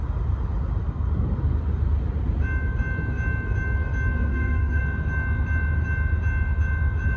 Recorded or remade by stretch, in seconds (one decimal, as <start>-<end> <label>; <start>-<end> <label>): 0.0-4.3 recorded; 4.3-4.8 remade; 4.8-7.2 recorded